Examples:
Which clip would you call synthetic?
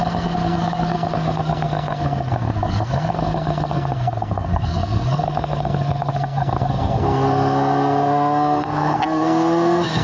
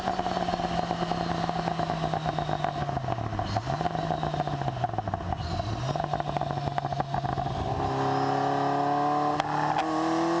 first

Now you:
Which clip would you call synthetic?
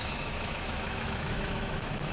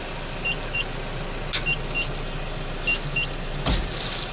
first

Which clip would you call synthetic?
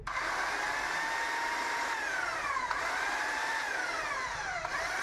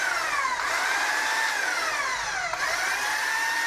first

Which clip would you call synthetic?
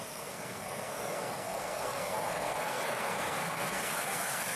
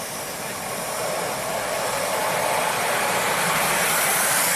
first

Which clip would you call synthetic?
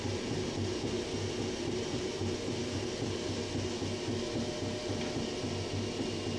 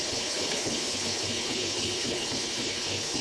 second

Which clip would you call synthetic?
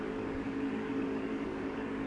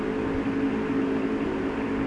first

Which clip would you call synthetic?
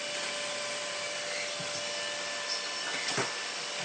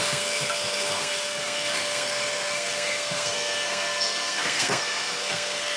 second